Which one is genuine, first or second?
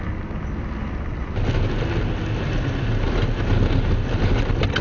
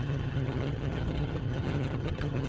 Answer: first